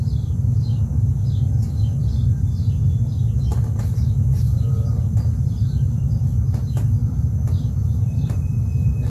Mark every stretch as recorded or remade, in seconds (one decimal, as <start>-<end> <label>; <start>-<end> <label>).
0.0-3.5 recorded; 3.5-6.4 remade; 6.4-7.0 recorded; 7.0-9.1 remade